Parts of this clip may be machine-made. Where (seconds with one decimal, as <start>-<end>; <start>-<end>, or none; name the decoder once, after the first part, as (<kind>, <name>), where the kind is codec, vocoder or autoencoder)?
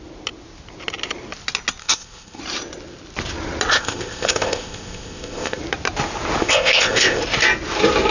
1.8-2.4 (codec, ZipCodec); 3.7-5.6; 6.4-7.2